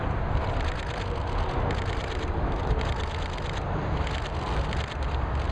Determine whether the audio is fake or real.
real